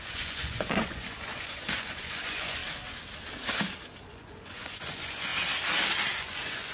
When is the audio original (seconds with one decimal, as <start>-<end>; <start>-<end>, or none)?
2.6-4.1; 5.3-6.2